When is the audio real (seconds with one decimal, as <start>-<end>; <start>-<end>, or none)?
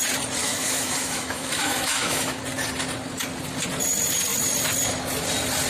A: 0.0-0.4; 2.4-5.7